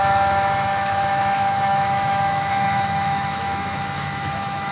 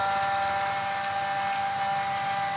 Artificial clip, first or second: first